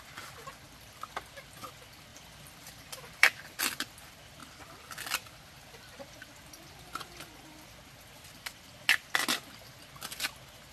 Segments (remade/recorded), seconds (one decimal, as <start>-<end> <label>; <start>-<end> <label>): 0.0-0.5 recorded; 0.5-1.1 remade; 1.1-2.1 recorded; 2.1-3.6 remade; 3.6-4.4 recorded; 4.4-7.0 remade; 7.0-10.7 recorded